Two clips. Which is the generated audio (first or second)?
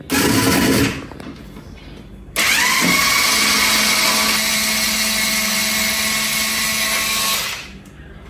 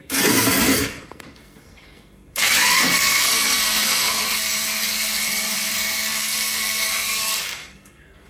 second